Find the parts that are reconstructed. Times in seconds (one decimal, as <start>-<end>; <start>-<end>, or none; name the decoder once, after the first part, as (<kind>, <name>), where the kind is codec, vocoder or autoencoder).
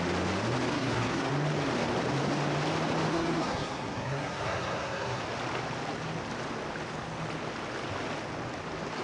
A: 0.7-1.3 (codec, SNAC); 3.1-5.2